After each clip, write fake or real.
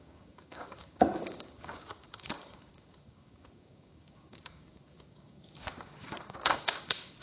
fake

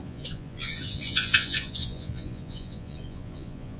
fake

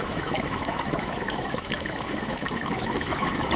fake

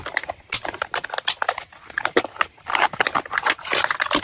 real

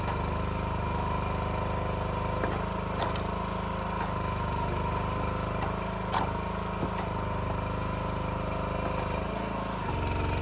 real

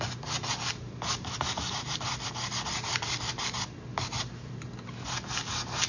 real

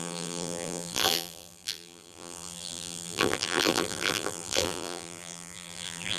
fake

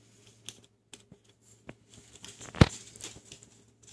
real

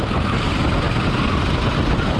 real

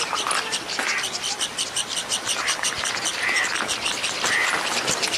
fake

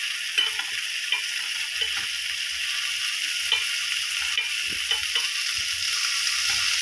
real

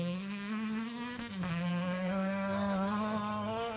fake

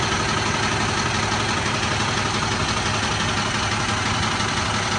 real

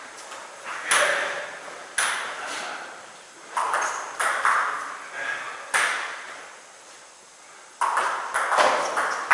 real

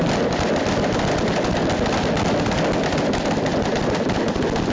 real